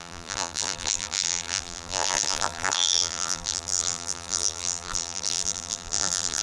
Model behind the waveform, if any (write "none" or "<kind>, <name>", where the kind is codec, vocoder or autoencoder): vocoder, BigVGAN v2